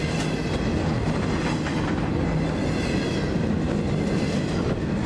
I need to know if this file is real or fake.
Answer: real